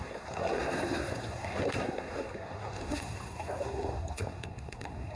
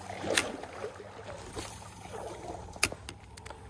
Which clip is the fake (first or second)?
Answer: first